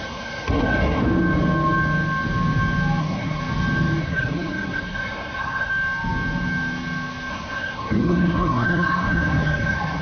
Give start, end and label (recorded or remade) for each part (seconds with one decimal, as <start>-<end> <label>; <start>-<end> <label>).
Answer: 0.0-1.0 remade; 1.0-3.0 recorded; 3.0-3.4 remade; 3.4-4.0 recorded; 4.0-5.7 remade; 5.7-7.3 recorded; 7.3-10.0 remade